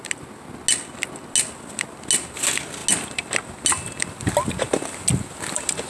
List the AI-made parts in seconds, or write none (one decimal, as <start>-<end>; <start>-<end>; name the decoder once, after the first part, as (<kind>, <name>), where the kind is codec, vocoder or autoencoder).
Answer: none